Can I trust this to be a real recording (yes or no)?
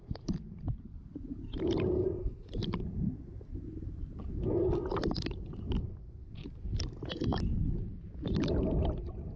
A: yes